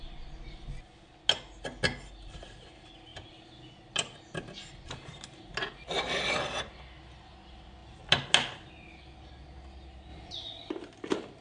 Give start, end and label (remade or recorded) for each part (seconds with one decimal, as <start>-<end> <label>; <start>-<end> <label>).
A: 0.0-11.4 recorded